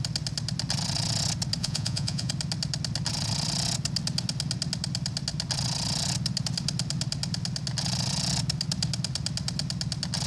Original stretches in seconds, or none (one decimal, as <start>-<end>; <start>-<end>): 0.0-1.6; 2.3-10.3